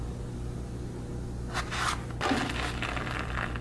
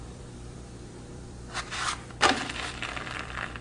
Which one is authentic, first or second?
first